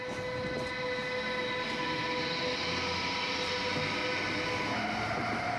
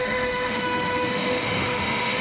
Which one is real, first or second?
first